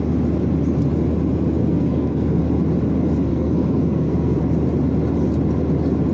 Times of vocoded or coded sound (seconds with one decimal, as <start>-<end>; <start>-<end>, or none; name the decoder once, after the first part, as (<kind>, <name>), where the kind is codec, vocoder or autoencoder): 1.6-2.4 (codec, SNAC); 3.3-4.4

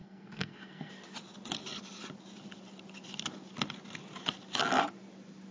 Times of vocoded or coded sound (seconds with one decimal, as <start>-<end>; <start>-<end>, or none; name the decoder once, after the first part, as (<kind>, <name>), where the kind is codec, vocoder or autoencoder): 0.0-0.9 (codec, SNAC)

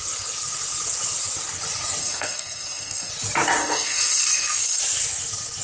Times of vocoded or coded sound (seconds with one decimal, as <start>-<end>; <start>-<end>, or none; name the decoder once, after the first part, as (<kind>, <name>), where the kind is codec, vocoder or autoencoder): 2.0-3.1 (codec, SNAC); 3.6-4.8

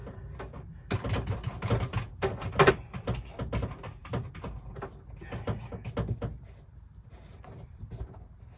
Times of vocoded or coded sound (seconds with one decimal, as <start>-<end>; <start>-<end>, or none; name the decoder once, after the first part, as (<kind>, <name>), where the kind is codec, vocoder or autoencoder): none